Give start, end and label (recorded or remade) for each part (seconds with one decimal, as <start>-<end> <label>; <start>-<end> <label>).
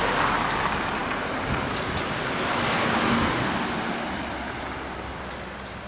0.0-5.9 recorded